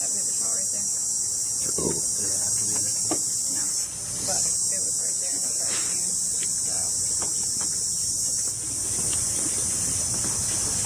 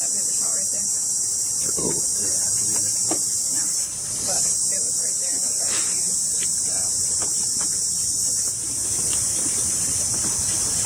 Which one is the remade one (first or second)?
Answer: second